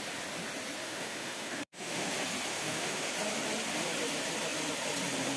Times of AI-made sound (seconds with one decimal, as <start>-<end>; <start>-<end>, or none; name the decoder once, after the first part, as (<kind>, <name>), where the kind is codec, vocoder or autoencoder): 0.8-2.1 (autoencoder, DAC-VAE); 2.5-3.1